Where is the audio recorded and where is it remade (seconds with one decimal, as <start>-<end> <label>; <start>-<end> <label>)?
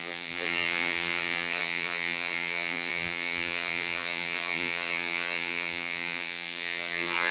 0.0-7.3 remade